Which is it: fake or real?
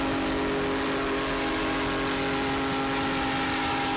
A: real